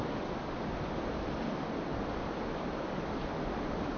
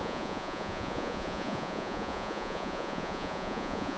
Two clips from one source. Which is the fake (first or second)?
second